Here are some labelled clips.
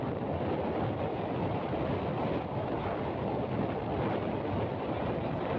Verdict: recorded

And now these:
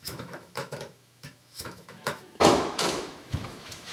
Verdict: remade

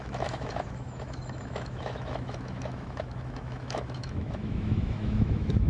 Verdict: remade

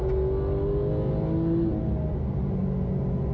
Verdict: recorded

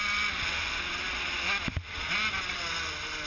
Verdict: recorded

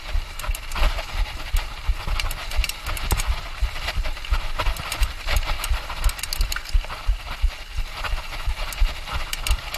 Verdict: recorded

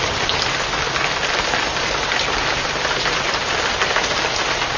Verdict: recorded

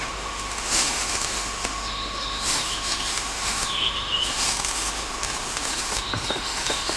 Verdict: remade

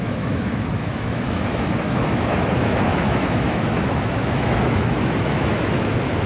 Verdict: remade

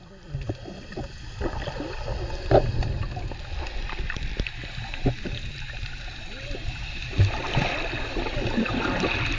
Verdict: recorded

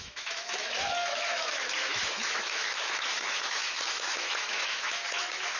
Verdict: remade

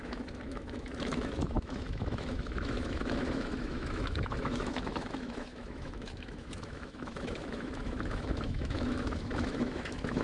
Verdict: remade